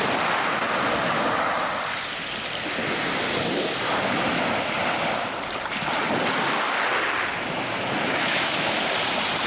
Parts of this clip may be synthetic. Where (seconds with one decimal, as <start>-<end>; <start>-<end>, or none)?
8.1-8.8